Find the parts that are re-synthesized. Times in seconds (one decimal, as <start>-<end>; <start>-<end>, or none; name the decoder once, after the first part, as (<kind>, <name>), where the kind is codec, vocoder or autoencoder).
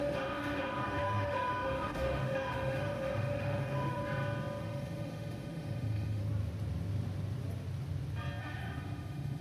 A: 0.0-4.0 (autoencoder, DAC-VAE); 4.6-6.2; 8.4-9.4